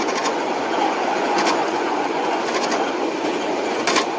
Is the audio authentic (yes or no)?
no